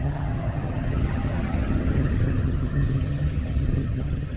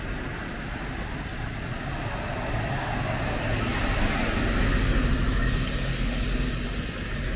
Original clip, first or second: second